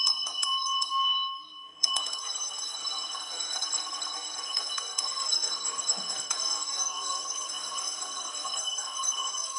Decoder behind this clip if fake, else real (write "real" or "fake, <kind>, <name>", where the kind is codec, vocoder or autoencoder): fake, codec, SNAC